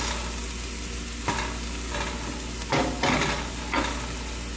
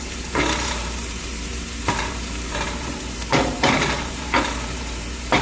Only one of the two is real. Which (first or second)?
first